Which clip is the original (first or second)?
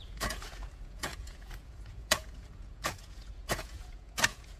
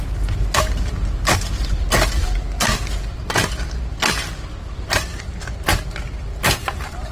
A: second